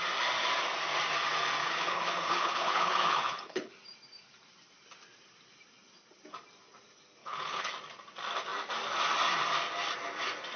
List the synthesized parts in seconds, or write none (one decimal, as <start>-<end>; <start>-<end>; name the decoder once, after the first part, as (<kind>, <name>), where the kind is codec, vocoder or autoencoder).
1.6-3.7 (codec, HILCodec); 7.2-7.7